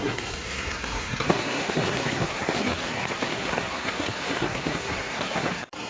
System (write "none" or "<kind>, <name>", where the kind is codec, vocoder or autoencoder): codec, SNAC